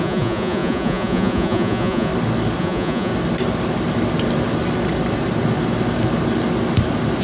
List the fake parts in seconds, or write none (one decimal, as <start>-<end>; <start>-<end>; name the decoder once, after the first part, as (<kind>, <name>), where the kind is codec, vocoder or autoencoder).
0.0-2.1 (vocoder, Vocos); 2.6-3.1